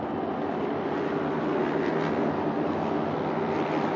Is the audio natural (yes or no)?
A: yes